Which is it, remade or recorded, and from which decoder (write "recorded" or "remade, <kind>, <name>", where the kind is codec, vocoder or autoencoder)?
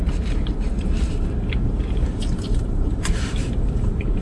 remade, vocoder, BigVGAN v2